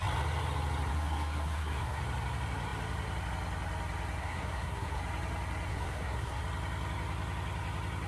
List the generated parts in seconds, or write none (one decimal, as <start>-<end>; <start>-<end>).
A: 0.9-2.0; 4.2-5.0; 5.7-6.4

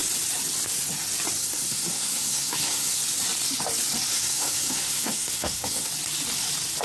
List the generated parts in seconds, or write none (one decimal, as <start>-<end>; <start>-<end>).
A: 1.4-3.0; 4.1-5.9

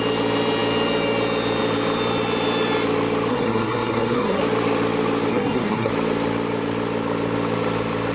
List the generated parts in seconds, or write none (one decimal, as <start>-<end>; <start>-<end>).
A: 3.3-4.4; 5.3-5.9

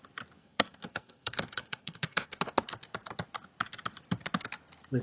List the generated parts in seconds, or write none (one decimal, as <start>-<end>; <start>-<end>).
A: 0.4-2.4

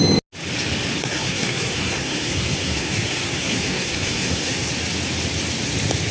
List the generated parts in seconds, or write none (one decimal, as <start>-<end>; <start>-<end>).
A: 1.0-4.7

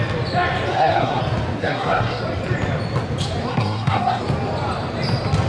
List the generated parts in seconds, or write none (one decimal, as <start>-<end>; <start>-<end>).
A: 0.7-1.2; 1.6-2.2; 3.5-4.2

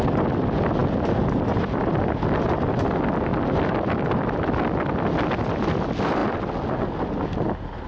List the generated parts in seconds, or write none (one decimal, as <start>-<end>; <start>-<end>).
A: none

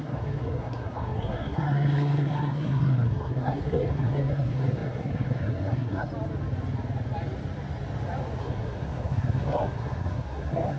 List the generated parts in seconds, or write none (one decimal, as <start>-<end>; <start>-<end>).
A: 0.0-6.1; 8.4-10.8